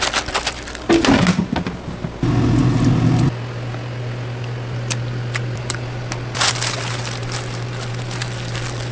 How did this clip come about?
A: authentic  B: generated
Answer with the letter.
A